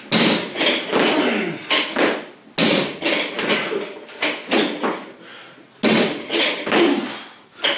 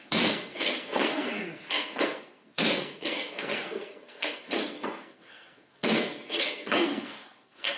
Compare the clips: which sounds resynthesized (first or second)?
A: second